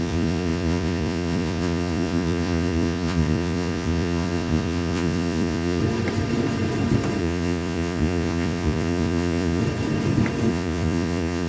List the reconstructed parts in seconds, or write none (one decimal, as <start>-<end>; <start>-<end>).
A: 0.0-5.8; 7.2-9.6; 10.5-11.5